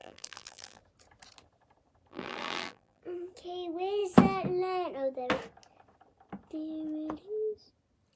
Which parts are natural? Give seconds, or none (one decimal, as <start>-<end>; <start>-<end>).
0.8-2.1; 3.0-8.2

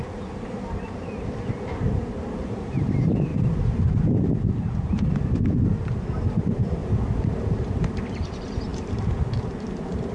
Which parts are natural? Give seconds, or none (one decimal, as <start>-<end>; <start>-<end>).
3.3-5.1; 6.8-7.4